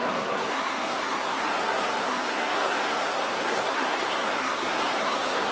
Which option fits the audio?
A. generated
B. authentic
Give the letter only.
A